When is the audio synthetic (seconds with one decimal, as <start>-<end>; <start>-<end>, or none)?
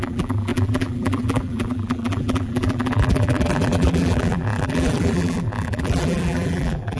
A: 0.0-7.0